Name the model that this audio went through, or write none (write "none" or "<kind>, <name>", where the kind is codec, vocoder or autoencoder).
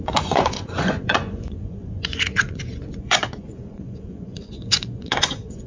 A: vocoder, Vocos